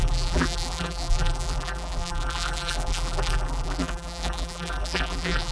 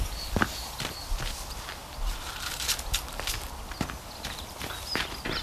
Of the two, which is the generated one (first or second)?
first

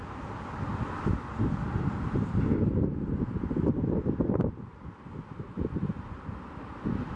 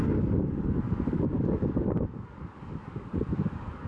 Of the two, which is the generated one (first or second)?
second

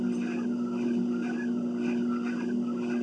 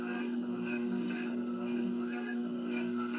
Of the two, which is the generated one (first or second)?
second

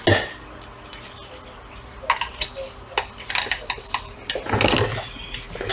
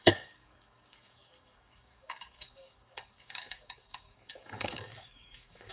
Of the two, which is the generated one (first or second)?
second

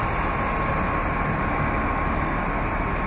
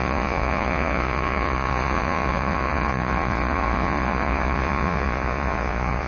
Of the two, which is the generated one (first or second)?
second